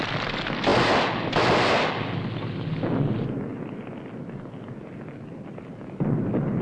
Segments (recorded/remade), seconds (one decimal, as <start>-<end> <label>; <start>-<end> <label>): 0.0-6.6 recorded